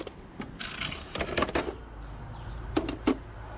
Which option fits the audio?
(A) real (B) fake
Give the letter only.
A